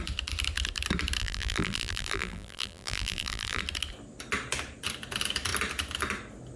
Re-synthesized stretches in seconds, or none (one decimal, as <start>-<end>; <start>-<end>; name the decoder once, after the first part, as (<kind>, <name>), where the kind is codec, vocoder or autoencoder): 1.2-3.6 (vocoder, BigVGAN v2)